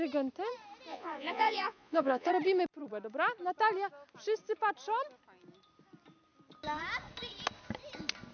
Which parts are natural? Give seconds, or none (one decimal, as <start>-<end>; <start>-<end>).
0.0-0.9; 2.3-8.3